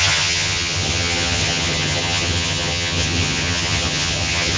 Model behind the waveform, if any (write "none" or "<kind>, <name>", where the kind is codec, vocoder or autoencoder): vocoder, HiFi-GAN